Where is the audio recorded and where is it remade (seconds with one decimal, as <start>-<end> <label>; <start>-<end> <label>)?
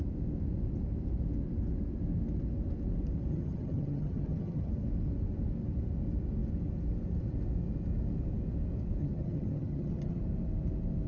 0.0-3.3 recorded; 3.3-4.7 remade; 4.7-9.0 recorded; 9.0-10.2 remade; 10.2-11.1 recorded